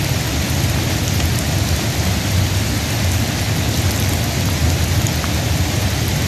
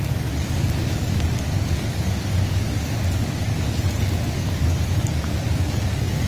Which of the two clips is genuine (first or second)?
first